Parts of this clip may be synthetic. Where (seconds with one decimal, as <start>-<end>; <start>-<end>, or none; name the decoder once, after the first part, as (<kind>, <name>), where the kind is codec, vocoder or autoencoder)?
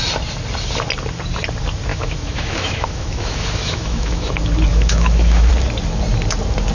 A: 1.9-4.3 (autoencoder, DAC-VAE); 4.7-5.5